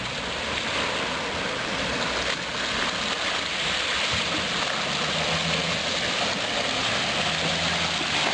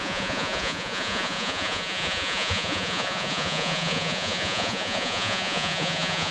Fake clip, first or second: second